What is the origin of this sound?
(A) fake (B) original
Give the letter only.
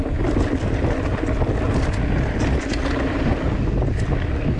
B